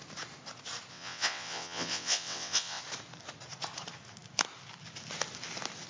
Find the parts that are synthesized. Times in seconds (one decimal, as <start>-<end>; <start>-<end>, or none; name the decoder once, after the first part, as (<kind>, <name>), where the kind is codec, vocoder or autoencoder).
0.9-2.8 (vocoder, WaveNeXt)